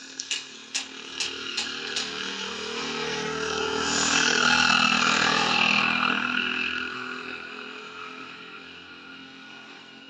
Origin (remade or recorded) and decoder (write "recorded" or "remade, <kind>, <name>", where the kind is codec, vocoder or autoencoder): remade, codec, SNAC